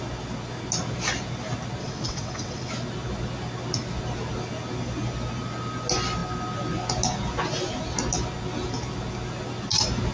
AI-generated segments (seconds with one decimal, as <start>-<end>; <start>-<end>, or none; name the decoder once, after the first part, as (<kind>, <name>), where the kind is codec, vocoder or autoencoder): 1.8-2.7 (vocoder, WaveNeXt)